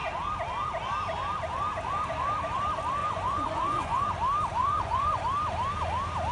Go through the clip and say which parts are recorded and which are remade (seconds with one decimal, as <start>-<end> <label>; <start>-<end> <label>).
0.0-3.0 recorded; 3.0-4.1 remade; 4.1-4.6 recorded; 4.6-5.2 remade; 5.2-6.3 recorded